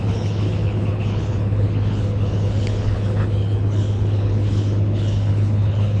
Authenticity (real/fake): fake